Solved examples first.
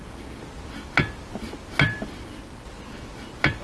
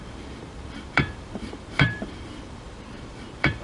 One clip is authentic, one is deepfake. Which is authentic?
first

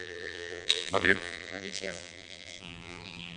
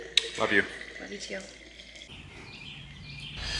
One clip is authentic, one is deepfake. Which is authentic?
second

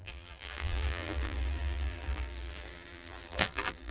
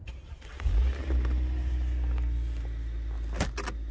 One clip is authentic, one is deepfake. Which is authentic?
second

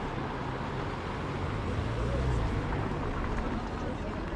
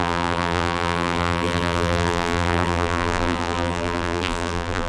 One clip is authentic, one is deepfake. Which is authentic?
first